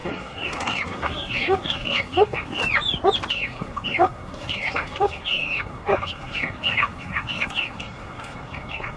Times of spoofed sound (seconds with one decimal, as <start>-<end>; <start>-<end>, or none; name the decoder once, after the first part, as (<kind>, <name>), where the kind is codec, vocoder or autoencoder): 0.0-2.6 (codec, SNAC); 3.3-9.0